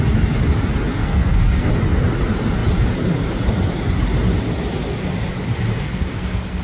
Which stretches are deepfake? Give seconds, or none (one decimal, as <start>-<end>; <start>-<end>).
0.9-1.7; 5.7-6.6